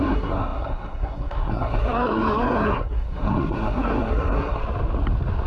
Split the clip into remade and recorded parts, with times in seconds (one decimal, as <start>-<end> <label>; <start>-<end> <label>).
0.0-4.6 remade; 4.6-5.5 recorded